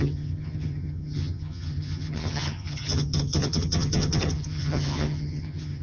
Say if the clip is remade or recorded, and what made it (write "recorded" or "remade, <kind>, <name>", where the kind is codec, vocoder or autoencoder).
remade, vocoder, HiFi-GAN